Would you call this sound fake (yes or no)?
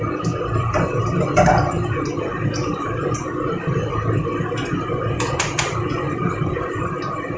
no